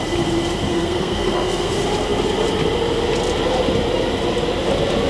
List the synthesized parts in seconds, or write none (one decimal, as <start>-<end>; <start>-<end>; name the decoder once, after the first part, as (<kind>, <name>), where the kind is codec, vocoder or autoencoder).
0.7-1.7 (codec, SNAC)